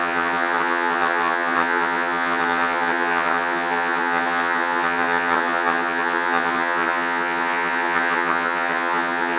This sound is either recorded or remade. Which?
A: remade